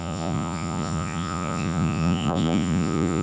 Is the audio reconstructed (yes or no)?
yes